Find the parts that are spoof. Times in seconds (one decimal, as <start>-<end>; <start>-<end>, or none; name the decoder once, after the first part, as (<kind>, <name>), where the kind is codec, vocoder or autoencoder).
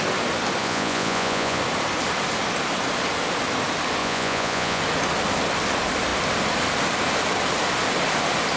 0.6-1.6 (vocoder, Vocos); 4.0-4.8